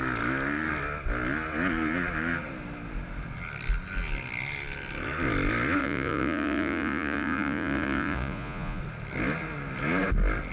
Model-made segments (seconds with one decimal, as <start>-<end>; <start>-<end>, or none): 5.8-8.8